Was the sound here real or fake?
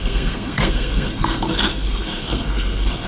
fake